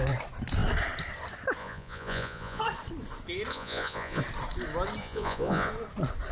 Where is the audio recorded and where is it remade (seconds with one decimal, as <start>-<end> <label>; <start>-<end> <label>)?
0.0-1.6 recorded; 1.6-2.6 remade; 2.6-3.5 recorded; 3.5-4.2 remade; 4.2-5.0 recorded; 5.0-5.7 remade; 5.7-6.3 recorded